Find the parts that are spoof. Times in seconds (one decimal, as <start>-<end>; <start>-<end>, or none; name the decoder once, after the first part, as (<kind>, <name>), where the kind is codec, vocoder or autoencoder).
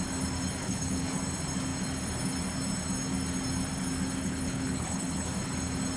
0.6-1.2 (codec, HILCodec); 4.2-5.3